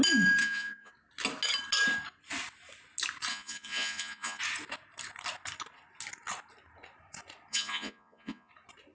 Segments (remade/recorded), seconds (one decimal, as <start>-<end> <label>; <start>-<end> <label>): 0.0-0.4 recorded; 0.4-0.9 remade; 0.9-3.3 recorded; 3.3-4.4 remade; 4.4-7.5 recorded; 7.5-8.5 remade; 8.5-8.9 recorded